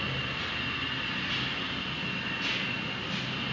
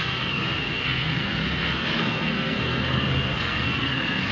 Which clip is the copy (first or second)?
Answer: second